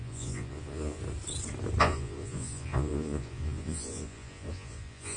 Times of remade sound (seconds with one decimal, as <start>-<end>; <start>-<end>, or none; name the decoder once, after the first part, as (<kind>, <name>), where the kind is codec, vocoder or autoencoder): 0.0-1.0 (vocoder, Vocos); 1.8-5.2